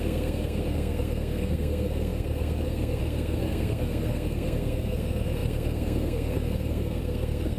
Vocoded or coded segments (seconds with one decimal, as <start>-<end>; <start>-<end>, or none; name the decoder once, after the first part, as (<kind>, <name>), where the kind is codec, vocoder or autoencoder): 0.0-7.6 (codec, SNAC)